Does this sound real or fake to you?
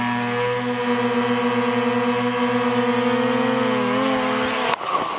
real